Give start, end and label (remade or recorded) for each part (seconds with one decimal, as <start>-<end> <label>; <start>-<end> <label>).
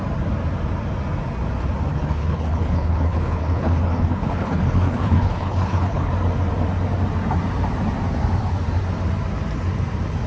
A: 0.0-1.9 recorded; 1.9-6.1 remade; 6.1-10.3 recorded